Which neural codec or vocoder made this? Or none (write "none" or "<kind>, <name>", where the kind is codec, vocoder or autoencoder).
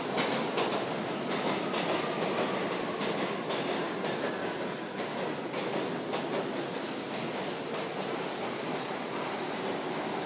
none